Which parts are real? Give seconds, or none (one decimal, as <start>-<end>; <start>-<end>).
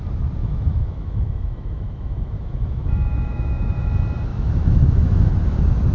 0.0-0.4; 3.9-4.3; 5.3-5.9